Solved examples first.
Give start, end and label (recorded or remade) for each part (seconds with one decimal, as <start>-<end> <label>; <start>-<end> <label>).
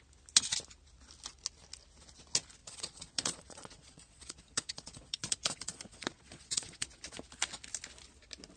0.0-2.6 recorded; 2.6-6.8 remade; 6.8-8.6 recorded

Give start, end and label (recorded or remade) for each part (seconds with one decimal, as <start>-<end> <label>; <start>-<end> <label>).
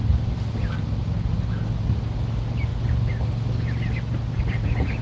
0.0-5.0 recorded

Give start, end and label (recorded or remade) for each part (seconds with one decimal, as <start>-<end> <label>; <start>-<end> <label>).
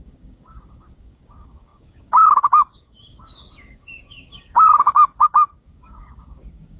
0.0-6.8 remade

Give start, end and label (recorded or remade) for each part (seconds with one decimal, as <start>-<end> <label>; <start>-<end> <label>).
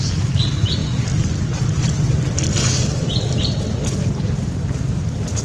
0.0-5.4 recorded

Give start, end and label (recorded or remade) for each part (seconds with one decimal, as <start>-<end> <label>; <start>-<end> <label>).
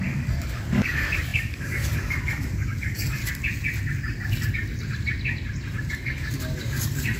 0.0-3.2 remade; 3.2-5.9 recorded; 5.9-7.2 remade